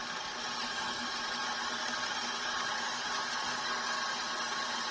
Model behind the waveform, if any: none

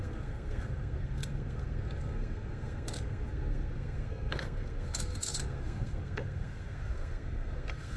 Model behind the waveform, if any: codec, SNAC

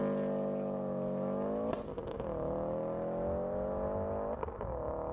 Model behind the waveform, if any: none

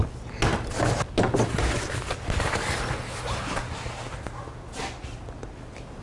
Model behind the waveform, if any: none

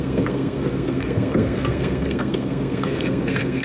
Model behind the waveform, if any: codec, SNAC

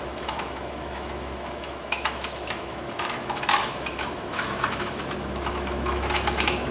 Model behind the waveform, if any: autoencoder, DAC-VAE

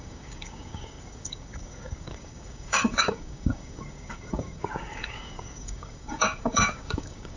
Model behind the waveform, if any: codec, DAC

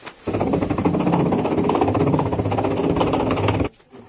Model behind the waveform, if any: none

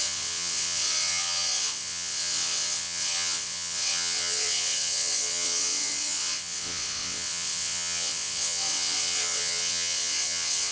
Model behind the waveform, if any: vocoder, WaveNeXt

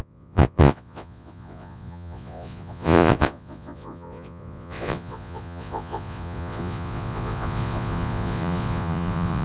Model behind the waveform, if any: vocoder, Vocos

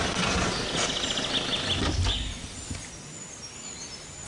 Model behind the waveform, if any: none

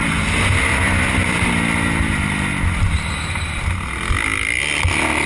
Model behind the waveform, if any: none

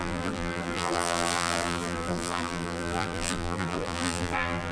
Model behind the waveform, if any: vocoder, BigVGAN v2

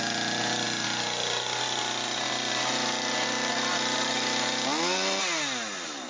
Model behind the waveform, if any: none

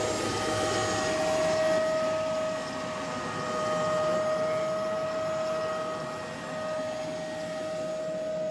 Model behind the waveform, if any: none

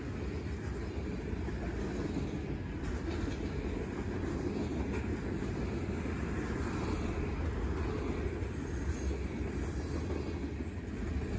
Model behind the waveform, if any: none